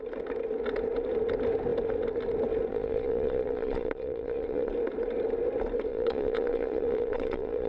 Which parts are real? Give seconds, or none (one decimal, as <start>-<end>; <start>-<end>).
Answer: 0.0-2.7; 4.7-5.9